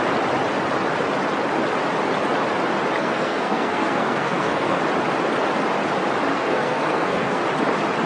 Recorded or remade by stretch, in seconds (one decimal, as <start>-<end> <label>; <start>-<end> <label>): 0.0-3.0 recorded; 3.0-4.8 remade; 4.8-6.3 recorded; 6.3-7.4 remade; 7.4-8.1 recorded